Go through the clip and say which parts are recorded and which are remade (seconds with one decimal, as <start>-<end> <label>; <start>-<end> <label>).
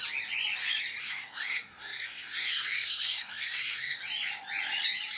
0.0-1.0 recorded; 1.0-4.0 remade; 4.0-5.2 recorded